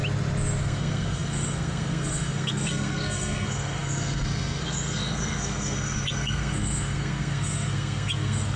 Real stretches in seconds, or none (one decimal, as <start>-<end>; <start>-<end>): 0.0-0.6